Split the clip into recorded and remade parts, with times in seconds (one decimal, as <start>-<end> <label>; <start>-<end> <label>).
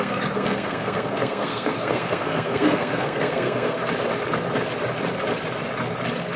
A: 0.0-3.8 remade; 3.8-6.4 recorded